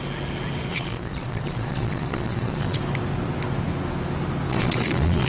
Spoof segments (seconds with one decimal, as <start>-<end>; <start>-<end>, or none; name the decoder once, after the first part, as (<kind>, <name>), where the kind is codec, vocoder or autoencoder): 0.7-2.8 (vocoder, Vocos); 4.5-5.3